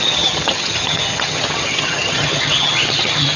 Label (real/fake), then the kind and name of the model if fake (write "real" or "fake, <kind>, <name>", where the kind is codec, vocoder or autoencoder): fake, vocoder, HiFi-GAN